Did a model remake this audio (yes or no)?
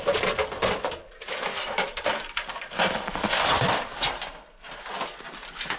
no